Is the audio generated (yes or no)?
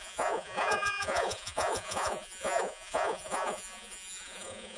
yes